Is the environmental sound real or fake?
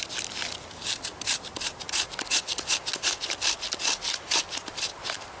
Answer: real